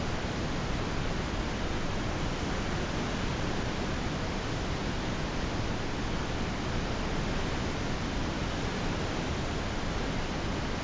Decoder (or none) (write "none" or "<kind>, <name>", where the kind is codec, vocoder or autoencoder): none